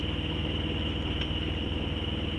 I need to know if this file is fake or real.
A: real